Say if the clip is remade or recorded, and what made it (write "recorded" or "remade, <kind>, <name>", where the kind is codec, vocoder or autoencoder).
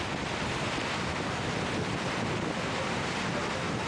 recorded